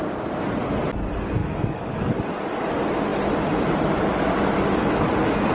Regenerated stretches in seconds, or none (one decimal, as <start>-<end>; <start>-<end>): 1.4-2.2